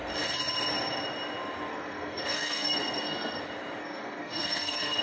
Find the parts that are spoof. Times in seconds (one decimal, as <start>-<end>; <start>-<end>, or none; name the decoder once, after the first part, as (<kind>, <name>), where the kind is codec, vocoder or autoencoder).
1.7-3.4 (codec, SNAC); 3.8-5.0